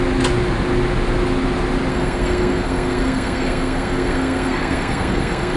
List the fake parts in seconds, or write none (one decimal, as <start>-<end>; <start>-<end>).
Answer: 1.9-5.6